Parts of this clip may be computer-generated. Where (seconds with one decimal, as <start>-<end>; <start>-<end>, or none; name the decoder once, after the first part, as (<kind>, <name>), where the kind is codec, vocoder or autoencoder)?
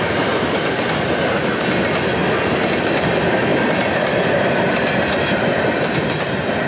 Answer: none